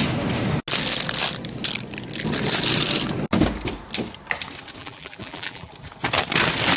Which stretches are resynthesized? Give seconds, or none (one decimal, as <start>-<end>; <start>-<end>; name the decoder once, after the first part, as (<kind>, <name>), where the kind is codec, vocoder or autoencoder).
4.8-5.7 (vocoder, BigVGAN v2)

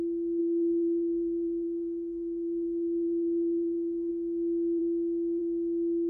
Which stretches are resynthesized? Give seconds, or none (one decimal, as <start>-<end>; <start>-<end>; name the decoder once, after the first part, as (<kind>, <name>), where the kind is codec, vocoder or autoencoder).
0.4-4.1 (codec, SNAC)

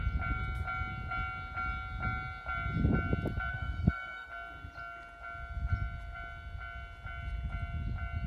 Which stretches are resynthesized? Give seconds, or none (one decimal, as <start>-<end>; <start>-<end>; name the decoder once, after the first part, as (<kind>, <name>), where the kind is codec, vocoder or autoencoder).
3.5-4.3 (codec, SNAC)

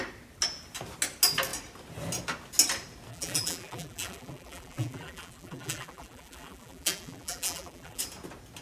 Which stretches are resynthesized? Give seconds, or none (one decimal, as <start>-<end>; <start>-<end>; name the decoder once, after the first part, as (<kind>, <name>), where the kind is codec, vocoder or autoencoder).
3.1-8.0 (vocoder, BigVGAN v2)

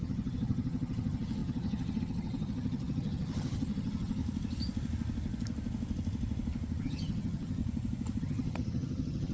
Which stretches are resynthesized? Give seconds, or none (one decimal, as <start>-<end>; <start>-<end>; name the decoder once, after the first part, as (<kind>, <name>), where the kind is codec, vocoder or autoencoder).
0.0-4.2 (vocoder, HiFi-GAN); 6.8-7.6; 8.2-9.3